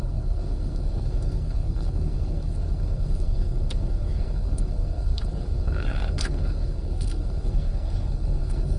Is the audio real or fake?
fake